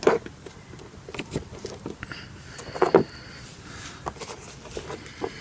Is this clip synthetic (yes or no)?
no